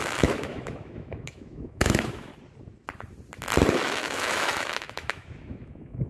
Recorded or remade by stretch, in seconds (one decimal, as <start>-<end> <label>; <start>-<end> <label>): 0.0-2.3 remade; 2.3-3.7 recorded; 3.7-6.1 remade